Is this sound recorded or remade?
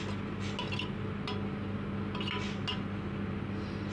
recorded